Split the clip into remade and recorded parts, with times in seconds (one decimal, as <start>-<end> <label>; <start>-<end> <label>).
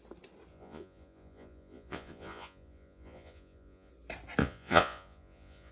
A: 0.0-0.5 recorded; 0.5-3.9 remade; 3.9-4.4 recorded; 4.4-5.7 remade